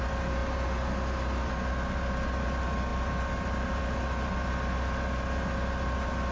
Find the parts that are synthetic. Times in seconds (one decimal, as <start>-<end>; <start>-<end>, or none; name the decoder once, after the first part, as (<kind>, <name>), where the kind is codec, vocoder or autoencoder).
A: none